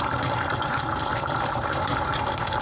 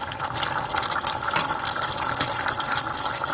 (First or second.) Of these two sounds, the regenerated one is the first